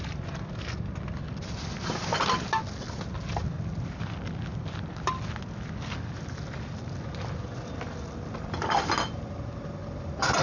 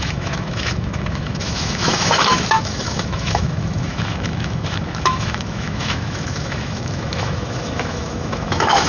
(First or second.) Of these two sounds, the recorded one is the first